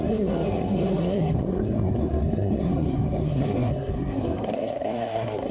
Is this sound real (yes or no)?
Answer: no